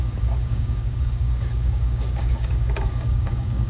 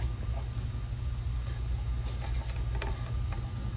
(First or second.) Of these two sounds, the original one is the second